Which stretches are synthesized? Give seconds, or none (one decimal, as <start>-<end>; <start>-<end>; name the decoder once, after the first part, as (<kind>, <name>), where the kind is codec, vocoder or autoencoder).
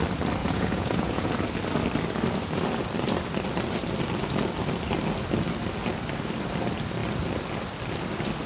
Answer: 0.4-1.3 (vocoder, Vocos)